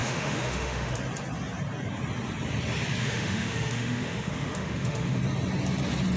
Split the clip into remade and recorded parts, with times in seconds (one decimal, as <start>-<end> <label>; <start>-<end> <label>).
0.0-1.0 remade; 1.0-3.0 recorded; 3.0-5.2 remade; 5.2-6.2 recorded